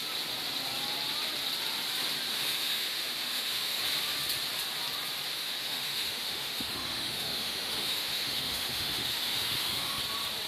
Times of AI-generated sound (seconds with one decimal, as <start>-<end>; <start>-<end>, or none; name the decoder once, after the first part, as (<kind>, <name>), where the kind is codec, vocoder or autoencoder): 2.3-3.8 (autoencoder, DAC-VAE); 5.3-10.0